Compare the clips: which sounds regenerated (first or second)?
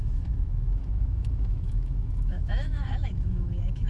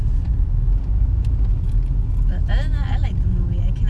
first